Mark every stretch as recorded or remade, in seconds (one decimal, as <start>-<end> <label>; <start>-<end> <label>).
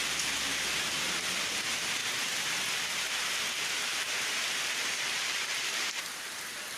0.0-1.4 recorded; 1.4-2.0 remade; 2.0-2.7 recorded; 2.7-6.8 remade